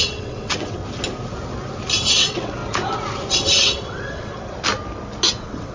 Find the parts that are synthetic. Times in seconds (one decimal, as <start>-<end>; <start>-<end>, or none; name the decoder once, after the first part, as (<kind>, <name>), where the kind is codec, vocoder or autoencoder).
0.0-0.8 (vocoder, WaveNeXt); 2.1-2.6; 3.3-4.3; 5.3-5.7